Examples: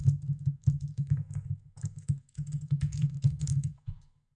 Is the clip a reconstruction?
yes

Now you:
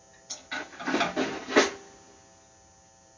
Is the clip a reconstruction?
no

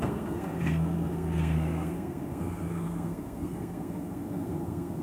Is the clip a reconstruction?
yes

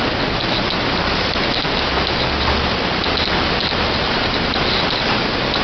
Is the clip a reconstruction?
no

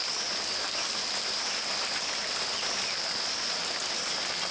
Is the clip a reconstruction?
no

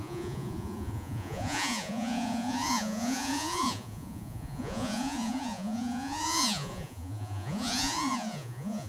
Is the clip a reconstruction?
yes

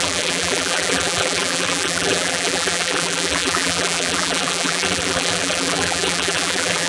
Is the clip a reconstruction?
yes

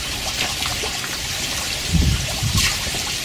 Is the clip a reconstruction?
yes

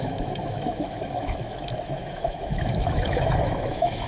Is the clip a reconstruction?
yes